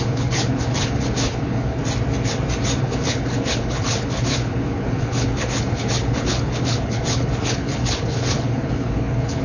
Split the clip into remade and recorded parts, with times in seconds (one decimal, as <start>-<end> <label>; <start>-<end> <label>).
0.0-1.8 remade; 1.8-2.8 recorded; 2.8-9.4 remade